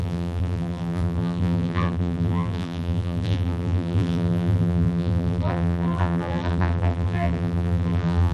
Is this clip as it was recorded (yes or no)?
no